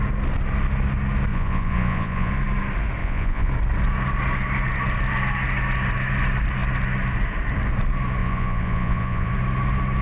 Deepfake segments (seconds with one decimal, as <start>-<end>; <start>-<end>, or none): 1.3-2.3; 3.0-3.5; 8.2-9.3